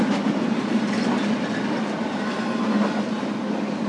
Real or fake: real